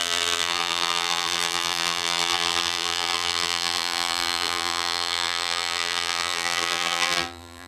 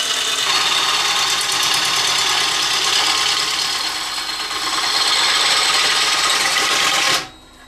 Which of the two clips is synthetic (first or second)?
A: first